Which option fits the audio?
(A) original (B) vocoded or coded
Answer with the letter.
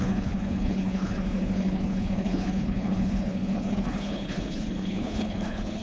B